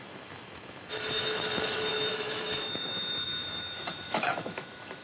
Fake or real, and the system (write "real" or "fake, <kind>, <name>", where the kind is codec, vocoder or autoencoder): fake, autoencoder, DAC-VAE